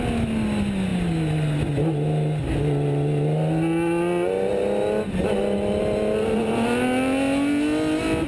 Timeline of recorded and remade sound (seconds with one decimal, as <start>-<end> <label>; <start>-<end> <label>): 0.0-8.3 recorded